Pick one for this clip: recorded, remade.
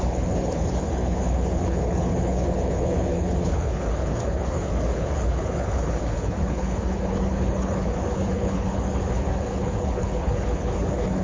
remade